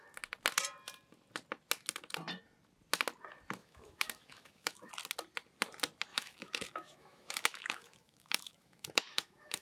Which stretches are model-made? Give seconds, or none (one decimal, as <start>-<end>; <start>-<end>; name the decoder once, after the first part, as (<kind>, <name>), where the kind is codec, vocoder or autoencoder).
3.6-4.9 (autoencoder, DAC-VAE); 6.1-9.6